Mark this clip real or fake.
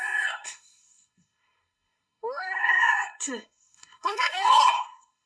fake